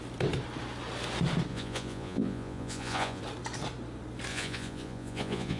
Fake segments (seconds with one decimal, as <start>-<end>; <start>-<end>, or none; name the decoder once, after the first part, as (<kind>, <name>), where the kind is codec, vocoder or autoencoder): 1.5-3.2 (vocoder, Vocos); 4.3-5.6